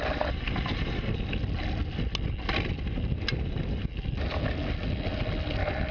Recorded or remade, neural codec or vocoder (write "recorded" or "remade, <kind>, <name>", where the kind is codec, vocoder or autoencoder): recorded